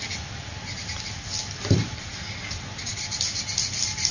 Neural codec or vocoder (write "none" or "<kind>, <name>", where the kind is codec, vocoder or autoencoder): none